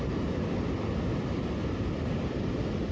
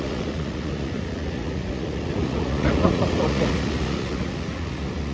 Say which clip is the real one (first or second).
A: first